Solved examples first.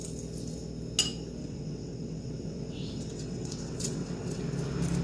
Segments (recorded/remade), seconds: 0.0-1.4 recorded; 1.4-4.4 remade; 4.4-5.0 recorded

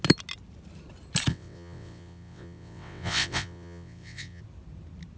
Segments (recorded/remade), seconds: 0.0-1.3 recorded; 1.3-4.4 remade; 4.4-5.2 recorded

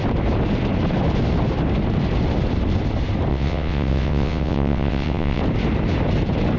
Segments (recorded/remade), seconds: 0.0-3.3 recorded; 3.3-5.4 remade; 5.4-6.6 recorded

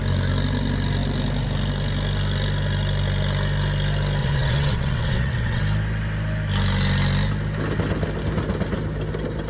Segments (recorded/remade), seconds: 0.0-4.2 recorded; 4.2-5.6 remade; 5.6-9.5 recorded

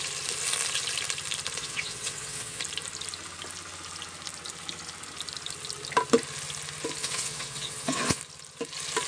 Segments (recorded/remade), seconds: 0.0-1.6 recorded; 1.6-2.6 remade; 2.6-7.0 recorded; 7.0-8.2 remade; 8.2-9.1 recorded